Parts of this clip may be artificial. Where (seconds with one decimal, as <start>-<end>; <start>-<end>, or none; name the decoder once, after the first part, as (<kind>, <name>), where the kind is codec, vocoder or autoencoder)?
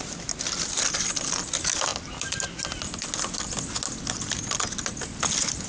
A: none